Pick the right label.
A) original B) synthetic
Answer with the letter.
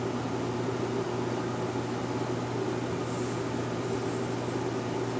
A